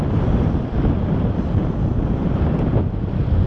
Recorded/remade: remade